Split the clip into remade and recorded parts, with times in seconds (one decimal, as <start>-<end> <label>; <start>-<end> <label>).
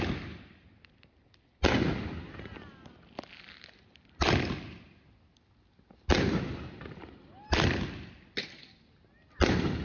0.0-9.8 recorded